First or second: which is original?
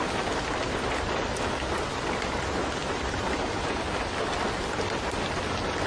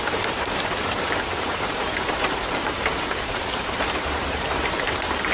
first